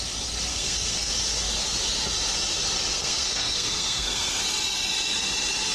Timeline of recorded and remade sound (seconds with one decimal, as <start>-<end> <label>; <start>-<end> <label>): 0.0-0.5 recorded; 0.5-1.1 remade; 1.1-2.9 recorded; 2.9-4.4 remade; 4.4-5.7 recorded